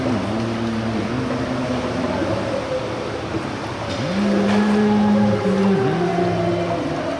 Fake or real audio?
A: real